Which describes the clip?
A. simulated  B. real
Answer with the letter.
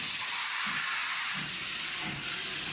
B